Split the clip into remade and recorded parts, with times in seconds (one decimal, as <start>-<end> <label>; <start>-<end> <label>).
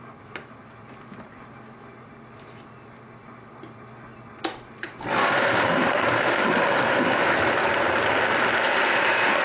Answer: 0.0-5.2 recorded; 5.2-7.3 remade; 7.3-9.4 recorded